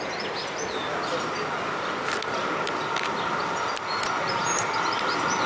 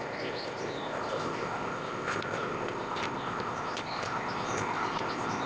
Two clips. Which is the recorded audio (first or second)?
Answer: first